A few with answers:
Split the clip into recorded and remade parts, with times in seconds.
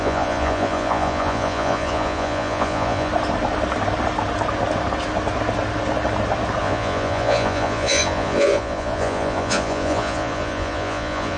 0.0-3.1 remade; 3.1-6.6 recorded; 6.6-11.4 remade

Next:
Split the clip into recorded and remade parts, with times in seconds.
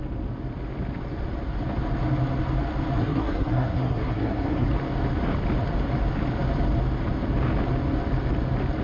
0.0-3.0 recorded; 3.0-4.7 remade; 4.7-8.8 recorded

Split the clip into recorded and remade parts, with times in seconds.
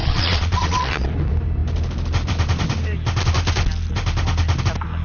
0.0-1.1 remade; 1.1-5.0 recorded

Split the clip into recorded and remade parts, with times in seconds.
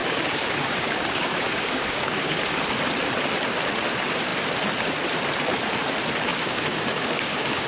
0.0-2.4 remade; 2.4-6.3 recorded; 6.3-7.7 remade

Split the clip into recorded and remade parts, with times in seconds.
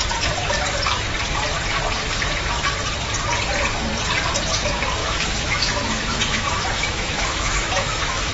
0.0-5.0 recorded; 5.0-8.3 remade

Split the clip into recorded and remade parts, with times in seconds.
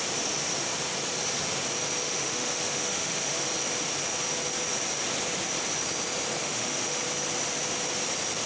0.0-2.0 recorded; 2.0-3.5 remade; 3.5-6.4 recorded; 6.4-7.0 remade; 7.0-8.5 recorded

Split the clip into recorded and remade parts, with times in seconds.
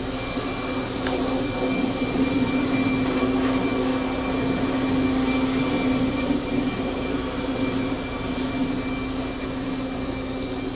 0.0-10.8 recorded